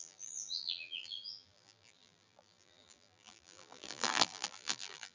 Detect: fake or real fake